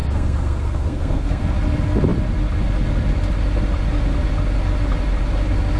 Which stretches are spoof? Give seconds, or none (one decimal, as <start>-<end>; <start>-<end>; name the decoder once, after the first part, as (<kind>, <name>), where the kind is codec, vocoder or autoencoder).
0.0-1.4 (codec, SNAC)